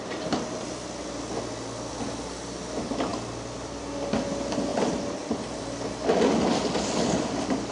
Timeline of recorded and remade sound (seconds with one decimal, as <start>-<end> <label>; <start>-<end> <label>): 0.0-7.7 recorded